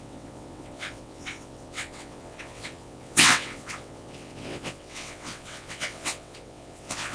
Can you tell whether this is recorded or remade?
remade